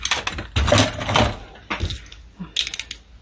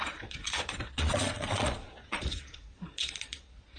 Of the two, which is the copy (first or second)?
second